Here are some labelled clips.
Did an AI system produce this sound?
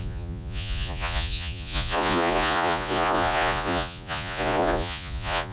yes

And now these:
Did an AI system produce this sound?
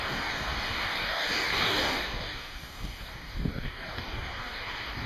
yes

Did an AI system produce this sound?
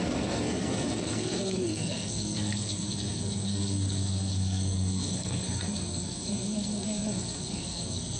yes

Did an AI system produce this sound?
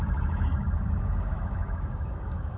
yes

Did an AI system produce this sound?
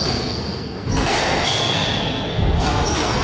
yes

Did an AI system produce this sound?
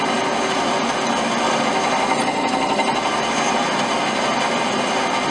no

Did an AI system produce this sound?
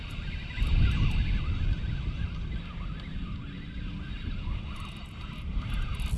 no